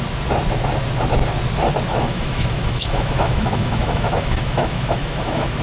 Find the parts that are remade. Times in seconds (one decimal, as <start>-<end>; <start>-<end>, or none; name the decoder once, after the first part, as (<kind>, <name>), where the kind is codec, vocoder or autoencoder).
1.9-5.6 (autoencoder, DAC-VAE)